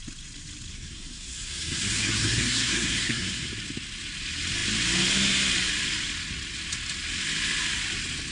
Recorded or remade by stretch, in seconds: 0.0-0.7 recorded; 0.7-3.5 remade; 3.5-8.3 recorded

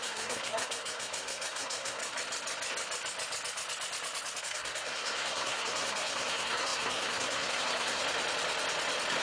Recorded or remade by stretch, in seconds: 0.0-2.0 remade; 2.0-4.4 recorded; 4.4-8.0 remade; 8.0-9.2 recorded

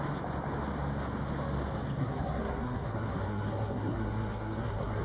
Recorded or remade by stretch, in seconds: 0.0-2.0 recorded; 2.0-5.0 remade

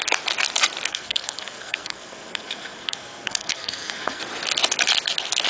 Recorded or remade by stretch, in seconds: 0.0-0.9 recorded; 0.9-4.2 remade; 4.2-5.5 recorded